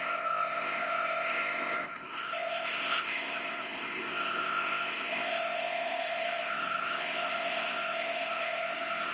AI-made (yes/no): yes